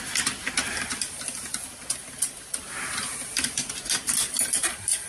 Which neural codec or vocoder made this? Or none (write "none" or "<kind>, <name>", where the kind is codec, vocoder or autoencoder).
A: none